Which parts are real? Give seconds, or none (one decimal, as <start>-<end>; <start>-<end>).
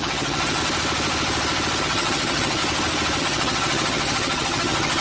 0.6-1.8; 2.6-3.2